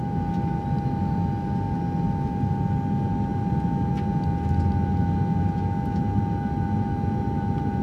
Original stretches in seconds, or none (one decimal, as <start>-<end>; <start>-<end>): 0.0-7.8